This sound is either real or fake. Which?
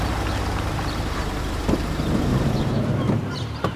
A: fake